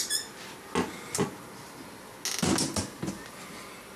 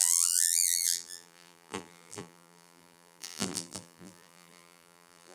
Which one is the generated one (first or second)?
second